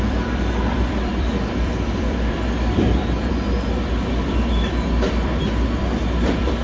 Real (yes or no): no